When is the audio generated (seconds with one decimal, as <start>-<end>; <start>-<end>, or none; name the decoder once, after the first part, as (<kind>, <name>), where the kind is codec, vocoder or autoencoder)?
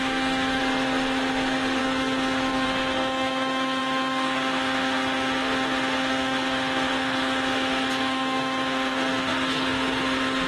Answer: 0.0-0.6 (autoencoder, DAC-VAE); 1.8-10.5